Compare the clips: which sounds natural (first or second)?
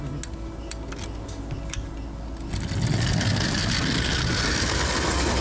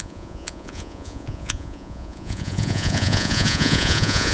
first